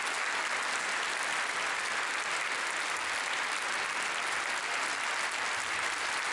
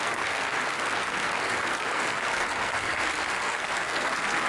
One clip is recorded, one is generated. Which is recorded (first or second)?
first